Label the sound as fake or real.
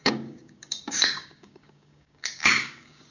fake